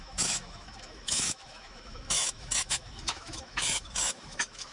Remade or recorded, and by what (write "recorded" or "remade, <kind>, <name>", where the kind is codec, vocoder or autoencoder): remade, autoencoder, DAC-VAE